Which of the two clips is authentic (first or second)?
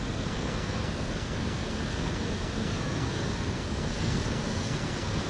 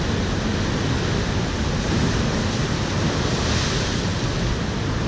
second